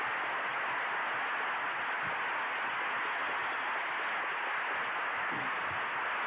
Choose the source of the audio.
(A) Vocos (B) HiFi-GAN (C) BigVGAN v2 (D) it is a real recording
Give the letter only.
D